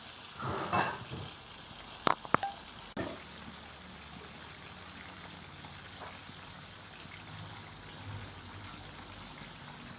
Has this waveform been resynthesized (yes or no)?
no